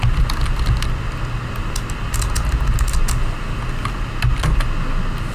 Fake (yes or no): no